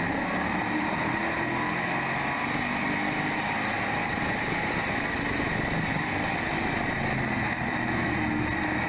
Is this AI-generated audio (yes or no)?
no